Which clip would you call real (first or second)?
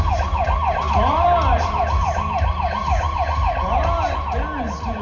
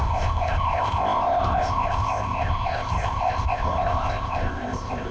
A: first